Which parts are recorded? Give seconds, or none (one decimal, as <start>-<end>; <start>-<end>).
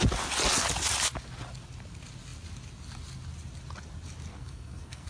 0.0-4.3